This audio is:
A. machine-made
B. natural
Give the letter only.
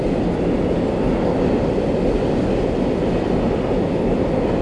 B